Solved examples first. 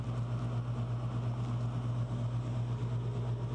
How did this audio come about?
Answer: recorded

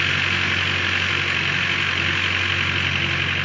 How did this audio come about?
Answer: recorded